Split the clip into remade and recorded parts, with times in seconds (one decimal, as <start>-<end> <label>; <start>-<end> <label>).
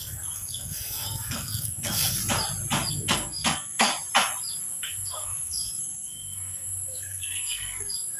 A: 0.0-2.2 remade; 2.2-2.9 recorded; 2.9-3.9 remade; 3.9-4.7 recorded; 4.7-8.2 remade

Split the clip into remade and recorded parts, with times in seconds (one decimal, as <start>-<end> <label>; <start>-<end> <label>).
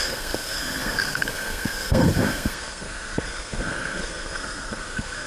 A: 0.0-5.3 remade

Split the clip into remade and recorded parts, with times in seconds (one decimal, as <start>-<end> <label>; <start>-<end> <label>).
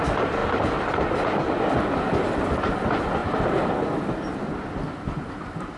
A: 0.0-3.2 recorded; 3.2-3.7 remade; 3.7-5.8 recorded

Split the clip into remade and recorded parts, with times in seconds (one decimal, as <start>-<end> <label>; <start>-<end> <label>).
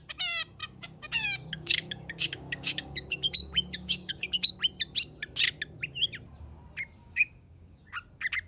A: 0.0-0.6 recorded; 0.6-4.5 remade; 4.5-7.0 recorded; 7.0-7.9 remade; 7.9-8.5 recorded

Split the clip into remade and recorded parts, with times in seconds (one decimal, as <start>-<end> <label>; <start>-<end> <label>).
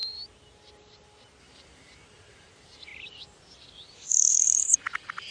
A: 0.0-1.4 recorded; 1.4-2.9 remade; 2.9-4.3 recorded; 4.3-5.3 remade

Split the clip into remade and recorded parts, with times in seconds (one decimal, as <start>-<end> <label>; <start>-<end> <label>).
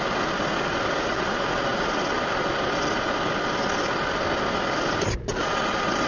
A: 0.0-6.1 recorded